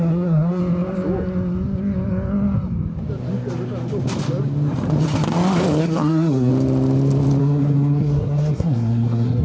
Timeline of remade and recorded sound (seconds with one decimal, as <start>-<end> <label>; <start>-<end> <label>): 0.0-0.6 remade; 0.6-5.8 recorded; 5.8-6.5 remade; 6.5-7.4 recorded; 7.4-9.4 remade